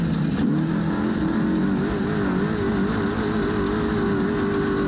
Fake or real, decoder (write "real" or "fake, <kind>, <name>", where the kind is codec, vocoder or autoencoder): real